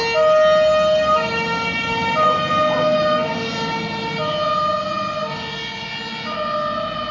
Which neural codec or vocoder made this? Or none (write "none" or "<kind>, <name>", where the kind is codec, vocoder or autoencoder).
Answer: none